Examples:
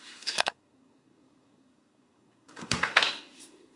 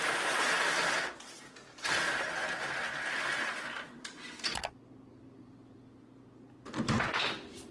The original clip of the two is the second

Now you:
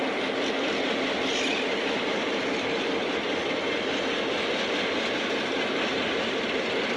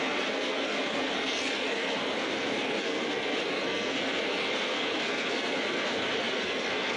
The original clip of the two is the first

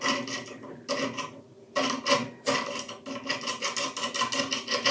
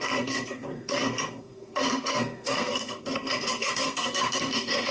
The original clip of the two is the first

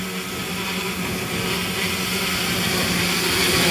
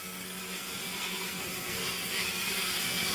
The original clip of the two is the first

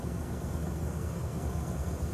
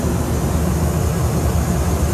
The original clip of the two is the second